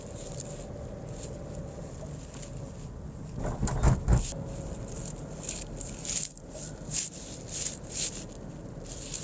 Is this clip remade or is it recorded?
recorded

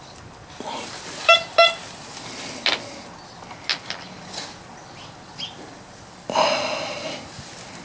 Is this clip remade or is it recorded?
recorded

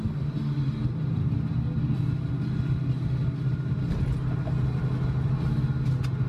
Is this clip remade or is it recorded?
recorded